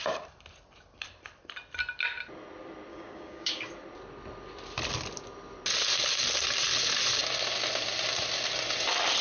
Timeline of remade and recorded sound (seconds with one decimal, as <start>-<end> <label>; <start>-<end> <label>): 0.0-2.9 recorded; 2.9-3.7 remade; 3.7-9.2 recorded